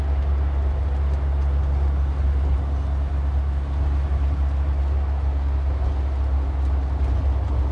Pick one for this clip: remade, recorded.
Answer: recorded